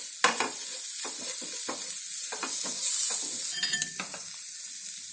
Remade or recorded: recorded